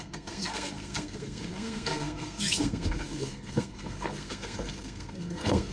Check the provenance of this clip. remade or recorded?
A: remade